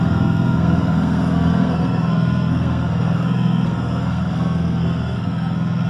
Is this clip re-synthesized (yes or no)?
yes